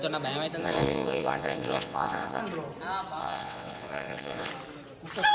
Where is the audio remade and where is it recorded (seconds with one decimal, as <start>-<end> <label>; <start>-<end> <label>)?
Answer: 0.0-0.6 recorded; 0.6-2.4 remade; 2.4-3.2 recorded; 3.2-4.5 remade; 4.5-5.3 recorded